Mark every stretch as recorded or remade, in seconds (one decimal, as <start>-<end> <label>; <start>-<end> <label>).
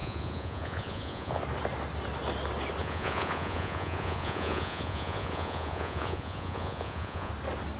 0.0-1.4 remade; 1.4-2.8 recorded; 2.8-7.3 remade; 7.3-7.8 recorded